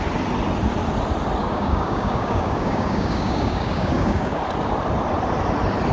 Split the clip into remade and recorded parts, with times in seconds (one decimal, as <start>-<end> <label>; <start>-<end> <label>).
0.0-1.4 recorded; 1.4-4.4 remade; 4.4-5.9 recorded